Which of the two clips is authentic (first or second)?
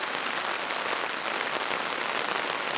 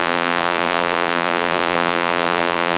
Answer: first